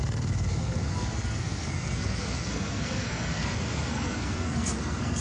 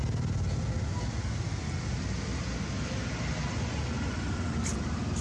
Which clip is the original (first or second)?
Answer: second